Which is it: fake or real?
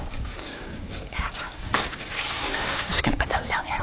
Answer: fake